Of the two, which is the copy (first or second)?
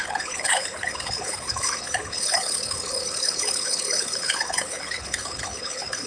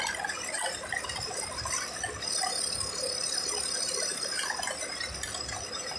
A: first